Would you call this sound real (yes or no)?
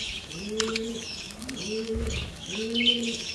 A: no